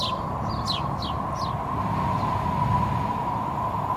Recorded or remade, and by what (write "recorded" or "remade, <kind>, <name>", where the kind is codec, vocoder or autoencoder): recorded